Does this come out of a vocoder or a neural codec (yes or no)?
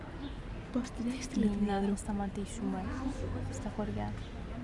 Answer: no